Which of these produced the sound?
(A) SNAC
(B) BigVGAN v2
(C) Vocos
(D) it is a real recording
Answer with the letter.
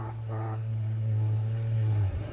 A